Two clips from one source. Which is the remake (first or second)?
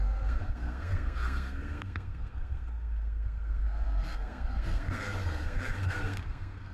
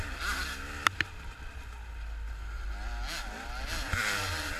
first